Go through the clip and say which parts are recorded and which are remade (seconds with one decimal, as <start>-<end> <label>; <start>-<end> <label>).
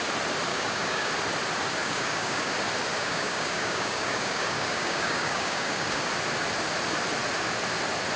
0.0-0.5 recorded; 0.5-1.1 remade; 1.1-1.8 recorded; 1.8-2.5 remade; 2.5-2.9 recorded; 2.9-6.1 remade; 6.1-8.2 recorded